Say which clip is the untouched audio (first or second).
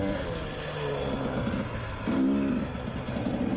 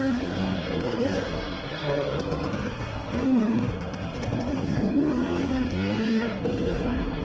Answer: first